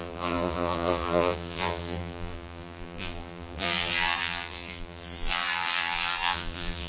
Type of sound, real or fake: fake